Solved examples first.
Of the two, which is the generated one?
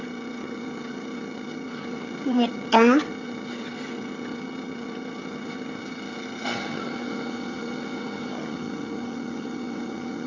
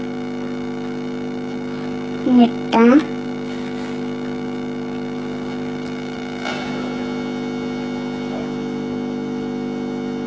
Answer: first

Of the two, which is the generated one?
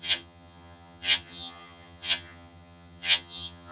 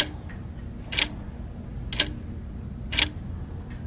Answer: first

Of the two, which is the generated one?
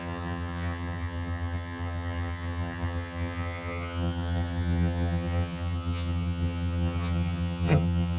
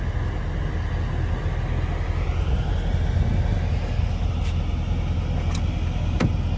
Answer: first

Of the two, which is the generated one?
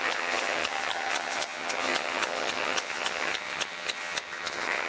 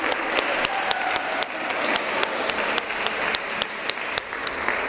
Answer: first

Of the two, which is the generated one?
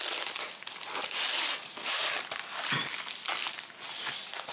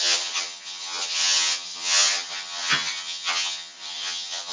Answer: second